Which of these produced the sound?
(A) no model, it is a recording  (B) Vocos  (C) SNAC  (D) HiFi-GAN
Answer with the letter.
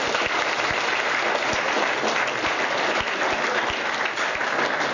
A